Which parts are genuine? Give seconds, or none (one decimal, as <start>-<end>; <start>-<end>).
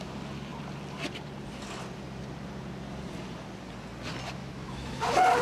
0.0-4.4; 5.0-5.4